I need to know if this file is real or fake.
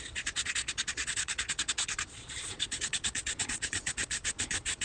fake